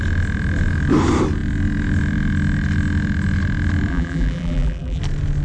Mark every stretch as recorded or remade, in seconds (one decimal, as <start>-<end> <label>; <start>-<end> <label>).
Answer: 0.0-3.9 recorded; 3.9-5.0 remade; 5.0-5.4 recorded